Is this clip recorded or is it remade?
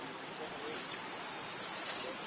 recorded